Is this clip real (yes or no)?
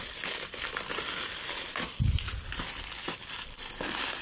yes